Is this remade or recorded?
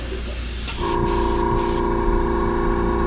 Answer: recorded